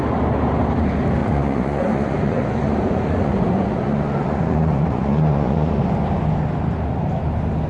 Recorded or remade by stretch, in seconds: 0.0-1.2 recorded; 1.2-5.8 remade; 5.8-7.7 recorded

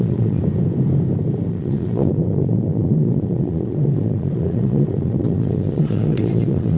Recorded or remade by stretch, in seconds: 0.0-0.4 remade; 0.4-1.5 recorded; 1.5-6.8 remade